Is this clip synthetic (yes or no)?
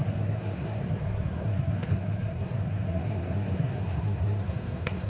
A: yes